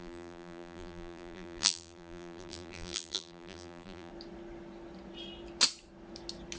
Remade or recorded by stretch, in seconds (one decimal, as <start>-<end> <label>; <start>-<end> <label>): 0.0-4.1 remade; 4.1-6.6 recorded